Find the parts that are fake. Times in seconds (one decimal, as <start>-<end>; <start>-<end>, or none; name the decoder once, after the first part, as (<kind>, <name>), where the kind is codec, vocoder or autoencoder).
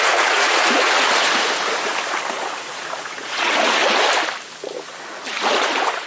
0.0-1.9 (vocoder, Vocos); 2.6-3.8; 5.4-6.1